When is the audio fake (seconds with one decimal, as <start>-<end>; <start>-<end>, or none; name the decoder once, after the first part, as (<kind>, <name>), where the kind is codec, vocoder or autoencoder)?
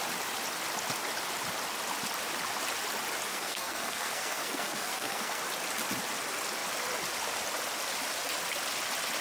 3.3-5.4 (codec, SNAC)